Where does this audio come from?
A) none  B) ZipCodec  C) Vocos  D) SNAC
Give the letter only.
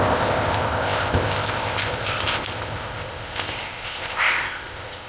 B